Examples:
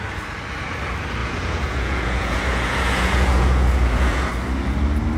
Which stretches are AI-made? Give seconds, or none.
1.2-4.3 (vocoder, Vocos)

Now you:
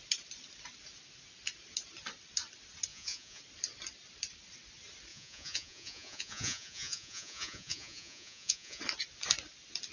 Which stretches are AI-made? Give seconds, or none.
2.9-3.4 (vocoder, Vocos); 5.1-8.8